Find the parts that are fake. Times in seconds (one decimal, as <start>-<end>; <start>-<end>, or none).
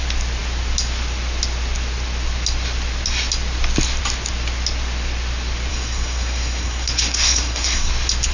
5.7-7.9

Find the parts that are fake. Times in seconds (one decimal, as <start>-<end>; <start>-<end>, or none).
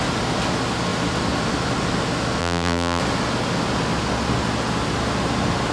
2.4-3.0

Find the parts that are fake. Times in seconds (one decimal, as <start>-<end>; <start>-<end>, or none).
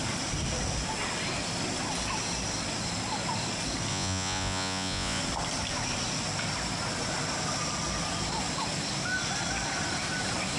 3.9-5.2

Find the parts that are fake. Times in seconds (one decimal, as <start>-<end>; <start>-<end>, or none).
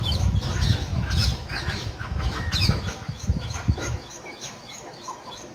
0.0-5.5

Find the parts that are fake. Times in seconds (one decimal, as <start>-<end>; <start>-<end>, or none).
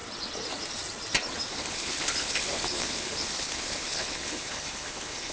1.5-5.3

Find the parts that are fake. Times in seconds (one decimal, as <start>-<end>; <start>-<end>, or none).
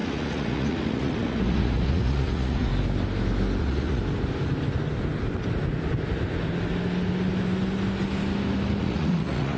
0.0-2.7; 3.6-4.0; 8.8-9.6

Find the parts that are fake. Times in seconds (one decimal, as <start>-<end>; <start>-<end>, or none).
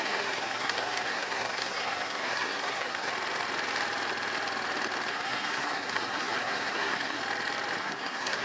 0.0-3.1; 5.1-7.2; 7.8-8.4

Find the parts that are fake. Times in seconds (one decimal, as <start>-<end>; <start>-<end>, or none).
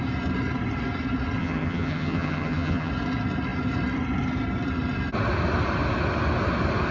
1.4-2.9